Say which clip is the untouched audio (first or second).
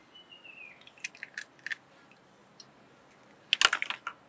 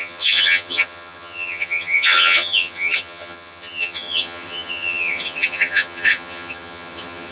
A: first